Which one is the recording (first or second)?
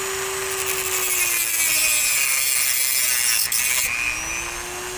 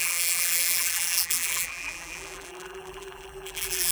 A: first